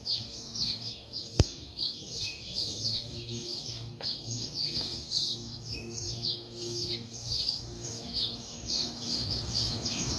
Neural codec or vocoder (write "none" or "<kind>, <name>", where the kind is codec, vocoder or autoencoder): codec, DAC